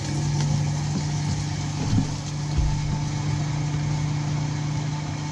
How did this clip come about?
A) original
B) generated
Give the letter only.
A